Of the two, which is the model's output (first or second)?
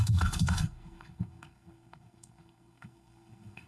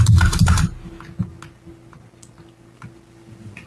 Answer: first